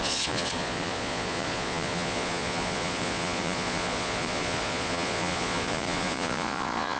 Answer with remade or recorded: remade